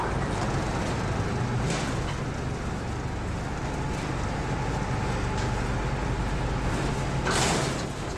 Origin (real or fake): real